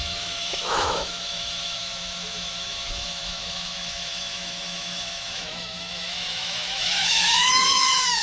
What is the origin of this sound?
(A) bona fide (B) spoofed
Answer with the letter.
B